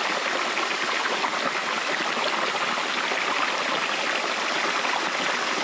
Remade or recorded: recorded